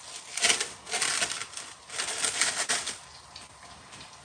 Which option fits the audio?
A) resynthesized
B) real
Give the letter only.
B